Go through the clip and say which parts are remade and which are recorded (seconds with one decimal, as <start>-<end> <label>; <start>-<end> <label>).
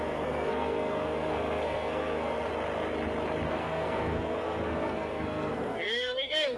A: 0.0-2.5 remade; 2.5-3.5 recorded; 3.5-6.6 remade